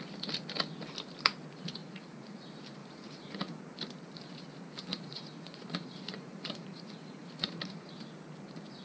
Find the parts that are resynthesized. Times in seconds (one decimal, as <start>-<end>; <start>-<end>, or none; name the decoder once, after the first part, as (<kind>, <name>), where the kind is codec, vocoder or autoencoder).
1.8-2.4 (vocoder, Vocos); 2.8-3.6; 4.9-7.9